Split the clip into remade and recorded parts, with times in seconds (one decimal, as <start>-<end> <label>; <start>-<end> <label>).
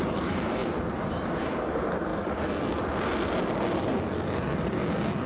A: 0.0-5.3 recorded